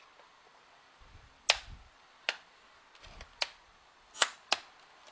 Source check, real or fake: real